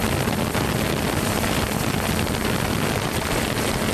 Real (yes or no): yes